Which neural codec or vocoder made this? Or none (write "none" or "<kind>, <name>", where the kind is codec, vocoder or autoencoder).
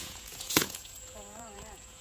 vocoder, Vocos